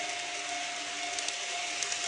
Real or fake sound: real